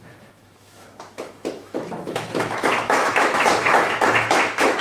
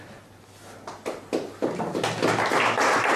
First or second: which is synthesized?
first